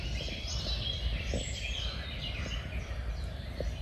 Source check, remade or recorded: recorded